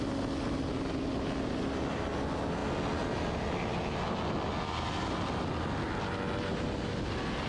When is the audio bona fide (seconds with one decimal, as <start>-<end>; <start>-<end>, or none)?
0.0-7.5